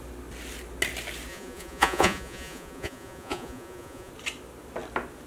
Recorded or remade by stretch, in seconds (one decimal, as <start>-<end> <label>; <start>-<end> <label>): 0.0-1.3 recorded; 1.3-4.1 remade; 4.1-5.3 recorded